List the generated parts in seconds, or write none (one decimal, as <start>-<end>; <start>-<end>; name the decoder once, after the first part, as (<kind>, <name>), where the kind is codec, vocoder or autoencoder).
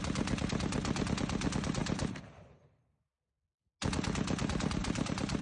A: 1.8-3.1 (vocoder, BigVGAN v2); 4.8-5.4